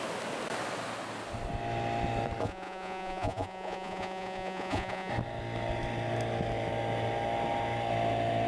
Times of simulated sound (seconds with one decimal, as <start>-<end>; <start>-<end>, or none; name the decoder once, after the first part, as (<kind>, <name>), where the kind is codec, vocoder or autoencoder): 2.4-5.1 (vocoder, Vocos)